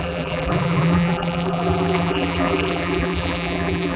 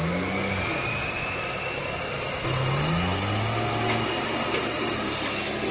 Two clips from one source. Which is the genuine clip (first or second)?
second